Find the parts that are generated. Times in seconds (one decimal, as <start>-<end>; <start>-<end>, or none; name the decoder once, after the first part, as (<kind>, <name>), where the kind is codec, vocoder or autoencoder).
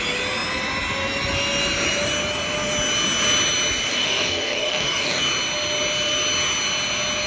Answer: 3.9-5.2 (codec, DAC)